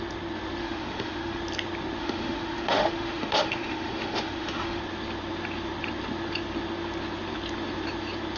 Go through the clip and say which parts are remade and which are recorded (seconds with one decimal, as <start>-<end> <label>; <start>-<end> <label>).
0.0-0.6 recorded; 0.6-1.4 remade; 1.4-2.0 recorded; 2.0-4.8 remade; 4.8-8.4 recorded